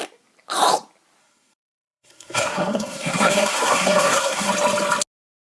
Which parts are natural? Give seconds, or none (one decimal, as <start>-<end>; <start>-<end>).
0.0-1.2; 4.5-5.5